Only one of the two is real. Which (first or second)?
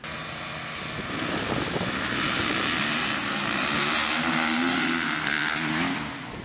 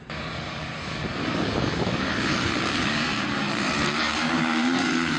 first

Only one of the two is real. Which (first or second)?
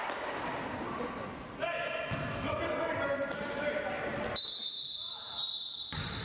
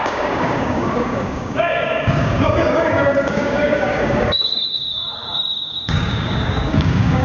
first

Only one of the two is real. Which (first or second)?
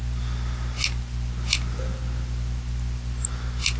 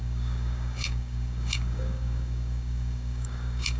first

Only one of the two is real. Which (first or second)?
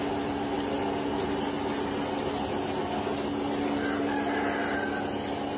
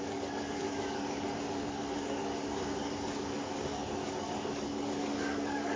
first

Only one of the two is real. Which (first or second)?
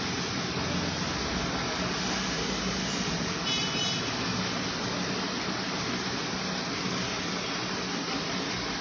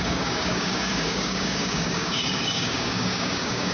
first